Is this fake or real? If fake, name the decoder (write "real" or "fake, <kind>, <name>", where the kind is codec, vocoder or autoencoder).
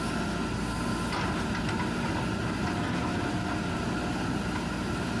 real